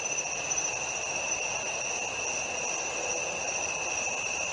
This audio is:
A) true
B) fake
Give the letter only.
A